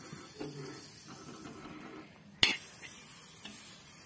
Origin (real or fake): real